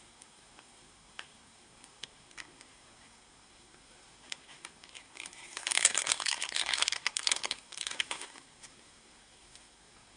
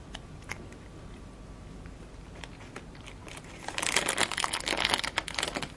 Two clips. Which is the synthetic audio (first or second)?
first